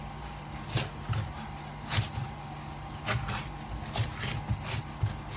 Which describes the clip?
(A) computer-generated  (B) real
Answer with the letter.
B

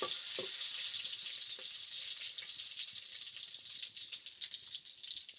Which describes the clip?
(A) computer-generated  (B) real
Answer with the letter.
B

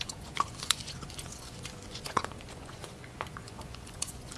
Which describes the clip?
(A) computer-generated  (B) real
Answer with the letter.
A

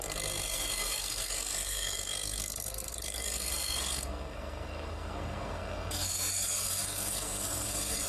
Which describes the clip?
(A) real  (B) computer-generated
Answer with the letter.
B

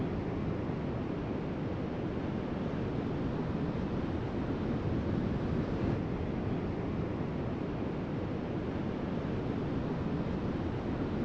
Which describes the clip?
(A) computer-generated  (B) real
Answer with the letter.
B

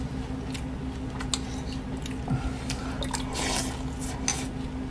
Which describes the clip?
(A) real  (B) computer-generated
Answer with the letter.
A